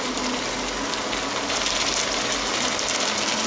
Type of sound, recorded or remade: recorded